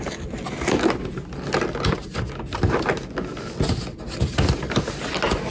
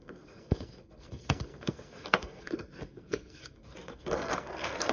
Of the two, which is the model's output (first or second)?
second